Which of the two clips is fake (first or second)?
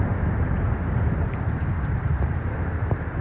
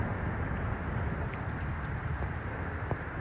first